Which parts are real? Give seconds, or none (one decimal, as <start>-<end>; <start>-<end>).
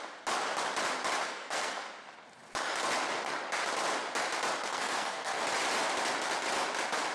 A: 0.0-1.3; 1.9-4.7; 5.4-7.1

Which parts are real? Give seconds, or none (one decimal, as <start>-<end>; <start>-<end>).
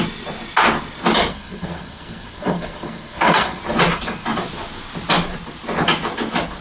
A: 0.0-1.3; 3.6-6.6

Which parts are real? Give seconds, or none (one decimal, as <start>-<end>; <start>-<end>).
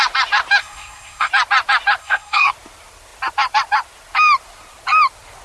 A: 0.0-0.6; 1.3-2.0; 2.5-5.4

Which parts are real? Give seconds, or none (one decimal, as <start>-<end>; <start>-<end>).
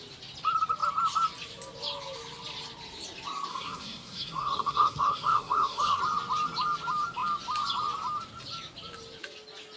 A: 0.0-3.5; 6.0-9.8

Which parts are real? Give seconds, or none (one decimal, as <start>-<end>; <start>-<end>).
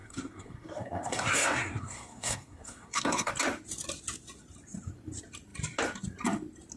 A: 3.3-6.8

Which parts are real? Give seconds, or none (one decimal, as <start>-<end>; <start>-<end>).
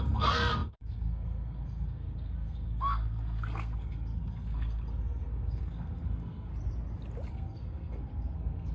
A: 6.5-7.3